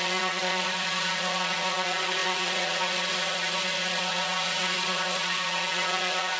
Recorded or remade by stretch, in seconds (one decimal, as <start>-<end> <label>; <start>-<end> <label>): 0.0-6.4 remade